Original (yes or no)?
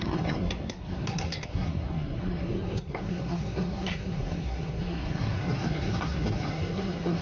no